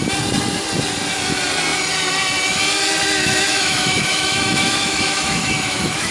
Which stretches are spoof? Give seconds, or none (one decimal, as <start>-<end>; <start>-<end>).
3.2-6.1